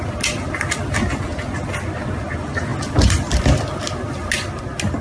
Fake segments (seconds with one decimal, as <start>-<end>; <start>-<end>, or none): none